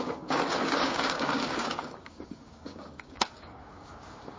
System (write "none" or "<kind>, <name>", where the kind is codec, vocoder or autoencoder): codec, DAC